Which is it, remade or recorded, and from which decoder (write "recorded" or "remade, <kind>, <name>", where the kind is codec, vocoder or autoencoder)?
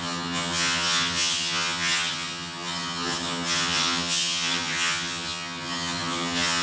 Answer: remade, vocoder, HiFi-GAN